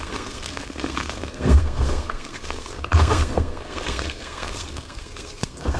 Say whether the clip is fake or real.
fake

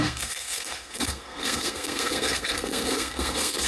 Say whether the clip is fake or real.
fake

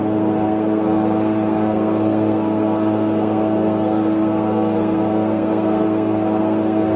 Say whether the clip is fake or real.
fake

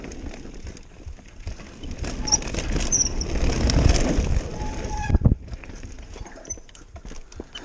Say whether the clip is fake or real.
real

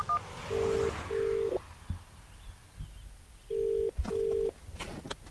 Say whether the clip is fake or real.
real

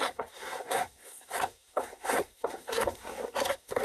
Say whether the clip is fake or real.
fake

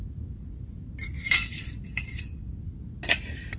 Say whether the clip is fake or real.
real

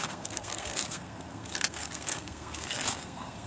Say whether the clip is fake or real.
fake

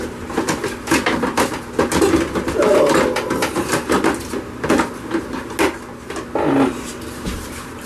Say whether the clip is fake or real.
real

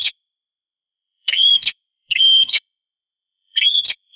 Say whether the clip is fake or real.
fake